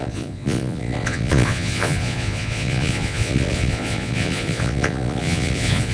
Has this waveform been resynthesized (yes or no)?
yes